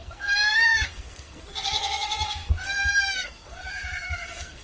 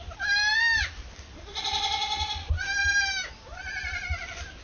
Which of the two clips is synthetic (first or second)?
first